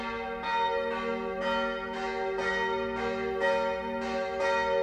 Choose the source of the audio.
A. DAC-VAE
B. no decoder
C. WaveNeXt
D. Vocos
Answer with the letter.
B